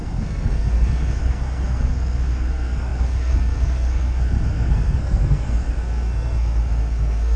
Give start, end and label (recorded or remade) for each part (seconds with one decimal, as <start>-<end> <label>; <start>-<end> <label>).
0.0-7.4 remade